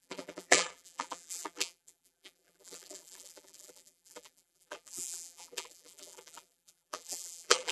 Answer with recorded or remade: remade